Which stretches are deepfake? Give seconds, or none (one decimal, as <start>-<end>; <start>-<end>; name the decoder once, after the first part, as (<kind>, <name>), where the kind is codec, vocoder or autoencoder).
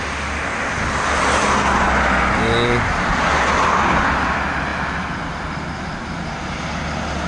none